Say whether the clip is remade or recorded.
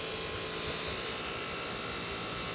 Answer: recorded